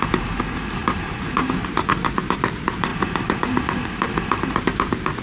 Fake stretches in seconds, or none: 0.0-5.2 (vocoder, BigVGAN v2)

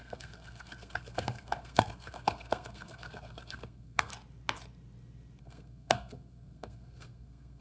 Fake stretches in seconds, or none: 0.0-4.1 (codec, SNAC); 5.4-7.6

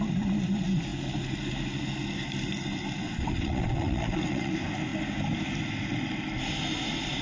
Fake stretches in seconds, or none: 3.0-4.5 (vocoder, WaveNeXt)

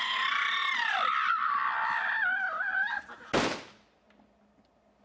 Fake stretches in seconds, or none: none